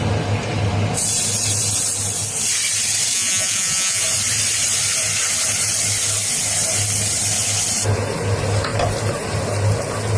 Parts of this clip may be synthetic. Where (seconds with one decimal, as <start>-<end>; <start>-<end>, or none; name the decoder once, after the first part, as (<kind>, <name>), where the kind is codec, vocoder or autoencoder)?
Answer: 3.1-4.0 (vocoder, Vocos)